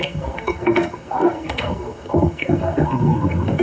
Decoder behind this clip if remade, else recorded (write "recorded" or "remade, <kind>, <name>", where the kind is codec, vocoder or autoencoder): remade, codec, SNAC